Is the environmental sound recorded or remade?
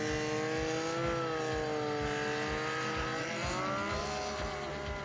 recorded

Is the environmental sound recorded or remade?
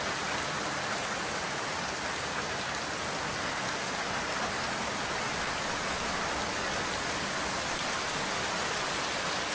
recorded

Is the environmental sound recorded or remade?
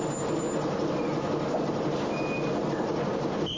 recorded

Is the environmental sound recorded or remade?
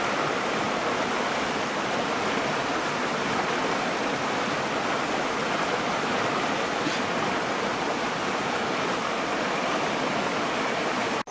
recorded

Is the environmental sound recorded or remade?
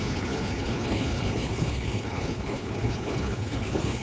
remade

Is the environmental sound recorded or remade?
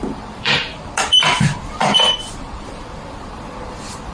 remade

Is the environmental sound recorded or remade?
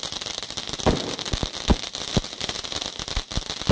recorded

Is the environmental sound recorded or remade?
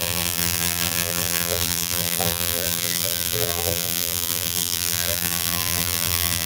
remade